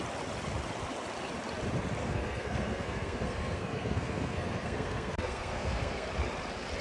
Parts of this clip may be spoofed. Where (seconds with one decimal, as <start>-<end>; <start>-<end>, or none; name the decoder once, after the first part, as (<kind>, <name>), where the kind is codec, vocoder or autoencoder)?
2.0-6.1 (codec, SNAC)